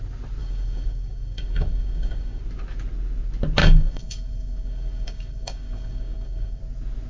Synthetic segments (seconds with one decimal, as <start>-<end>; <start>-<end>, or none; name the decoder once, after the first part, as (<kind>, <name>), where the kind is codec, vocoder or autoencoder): 0.4-2.4 (codec, DAC); 3.6-6.6